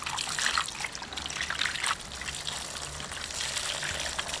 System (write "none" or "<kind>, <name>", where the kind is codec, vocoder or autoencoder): none